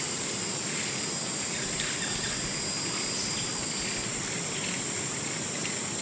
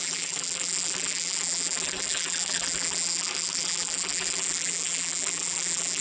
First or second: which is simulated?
second